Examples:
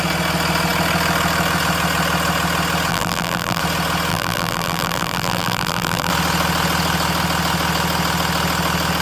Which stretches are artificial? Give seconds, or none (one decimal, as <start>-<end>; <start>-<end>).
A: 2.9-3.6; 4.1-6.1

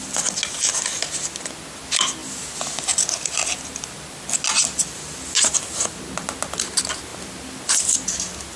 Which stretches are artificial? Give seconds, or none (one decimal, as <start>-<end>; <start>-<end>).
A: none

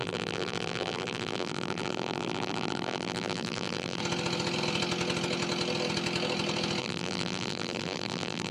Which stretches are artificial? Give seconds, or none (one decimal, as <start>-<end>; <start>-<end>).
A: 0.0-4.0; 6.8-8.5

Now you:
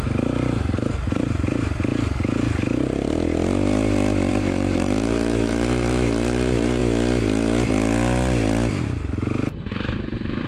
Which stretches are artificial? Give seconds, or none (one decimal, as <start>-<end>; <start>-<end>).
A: 0.0-1.9; 4.3-6.8; 9.5-10.5

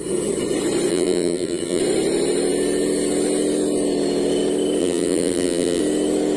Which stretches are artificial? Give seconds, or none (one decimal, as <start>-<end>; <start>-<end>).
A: 0.9-1.8; 4.8-5.8

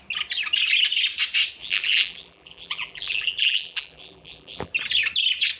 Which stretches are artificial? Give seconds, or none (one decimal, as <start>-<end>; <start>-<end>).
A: 1.6-4.7